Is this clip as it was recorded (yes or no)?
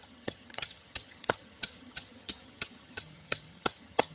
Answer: no